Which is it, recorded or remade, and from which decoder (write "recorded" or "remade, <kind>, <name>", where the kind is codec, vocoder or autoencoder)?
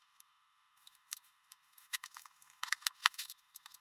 remade, autoencoder, DAC-VAE